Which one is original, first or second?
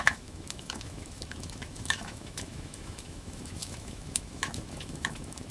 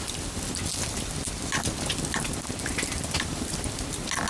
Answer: second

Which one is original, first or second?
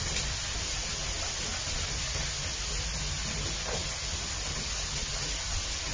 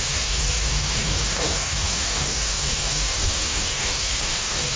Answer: first